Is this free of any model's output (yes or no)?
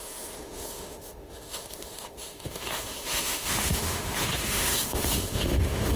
no